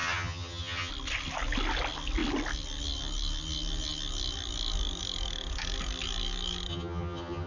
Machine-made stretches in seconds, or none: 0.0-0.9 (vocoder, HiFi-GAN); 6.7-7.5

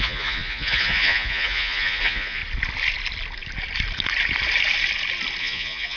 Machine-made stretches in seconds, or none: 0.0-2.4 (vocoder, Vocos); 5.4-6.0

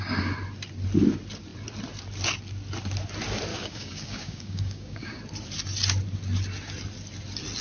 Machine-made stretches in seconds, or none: 3.5-5.2 (codec, DAC)

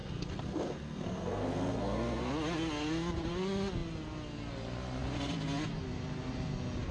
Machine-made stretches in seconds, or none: 0.0-2.3 (codec, SNAC)

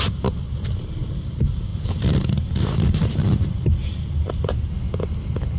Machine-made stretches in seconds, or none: none

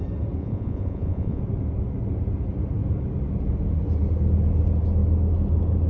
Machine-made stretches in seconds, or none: 0.4-1.4 (vocoder, Vocos)

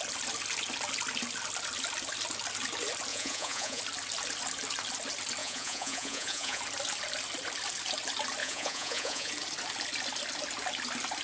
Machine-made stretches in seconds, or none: 3.1-3.8 (vocoder, Vocos); 5.4-6.6; 8.4-9.3